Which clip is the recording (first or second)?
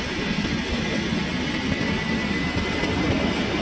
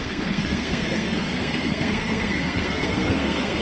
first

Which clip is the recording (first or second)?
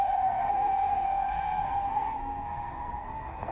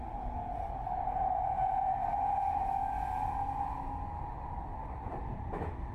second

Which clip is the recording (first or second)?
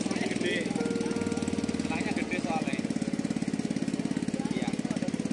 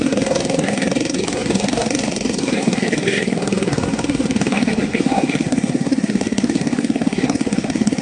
first